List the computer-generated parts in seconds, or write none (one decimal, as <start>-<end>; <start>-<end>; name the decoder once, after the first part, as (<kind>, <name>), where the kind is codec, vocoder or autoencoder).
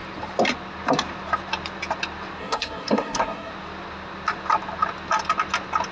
2.4-3.5 (codec, SNAC)